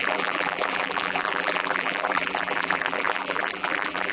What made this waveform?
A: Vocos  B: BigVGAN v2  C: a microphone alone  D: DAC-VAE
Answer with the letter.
B